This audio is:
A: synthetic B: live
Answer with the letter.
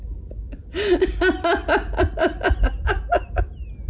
B